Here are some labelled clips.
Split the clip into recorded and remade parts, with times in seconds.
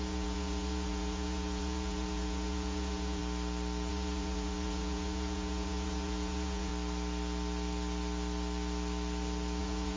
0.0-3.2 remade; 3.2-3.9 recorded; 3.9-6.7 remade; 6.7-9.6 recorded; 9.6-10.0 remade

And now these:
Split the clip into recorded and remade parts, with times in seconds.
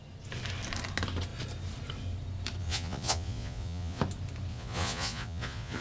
0.0-2.6 recorded; 2.6-4.0 remade; 4.0-4.5 recorded; 4.5-5.8 remade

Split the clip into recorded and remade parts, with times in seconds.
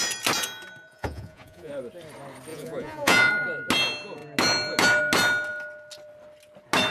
0.0-0.9 recorded; 0.9-1.7 remade; 1.7-2.5 recorded; 2.5-3.3 remade; 3.3-6.9 recorded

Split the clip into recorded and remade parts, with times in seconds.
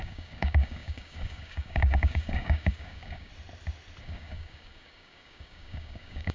0.0-3.3 remade; 3.3-4.0 recorded; 4.0-6.3 remade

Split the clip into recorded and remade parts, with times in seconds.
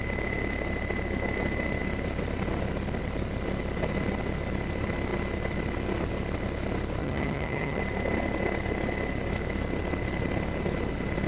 0.0-7.0 recorded; 7.0-7.8 remade; 7.8-11.3 recorded